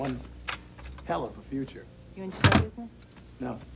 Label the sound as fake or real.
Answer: real